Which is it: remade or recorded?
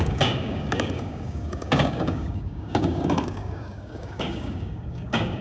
remade